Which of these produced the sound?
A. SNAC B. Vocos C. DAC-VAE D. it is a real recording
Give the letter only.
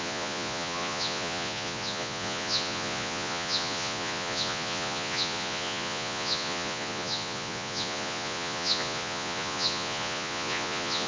B